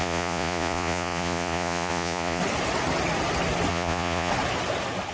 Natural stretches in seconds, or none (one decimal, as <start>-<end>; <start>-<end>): 2.4-3.7; 4.3-5.1